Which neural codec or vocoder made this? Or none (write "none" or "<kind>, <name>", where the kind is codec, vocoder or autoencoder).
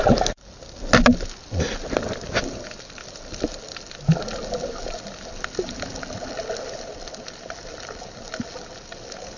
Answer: none